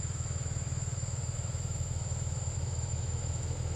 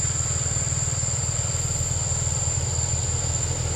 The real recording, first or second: second